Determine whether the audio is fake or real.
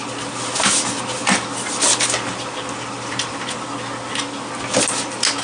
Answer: real